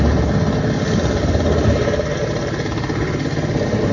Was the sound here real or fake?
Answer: real